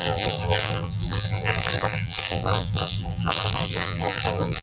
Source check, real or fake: fake